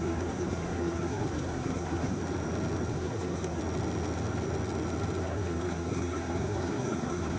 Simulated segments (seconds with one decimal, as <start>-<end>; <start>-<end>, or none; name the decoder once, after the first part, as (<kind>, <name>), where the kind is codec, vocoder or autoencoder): 0.0-2.2 (codec, SNAC); 2.9-3.6; 5.2-7.4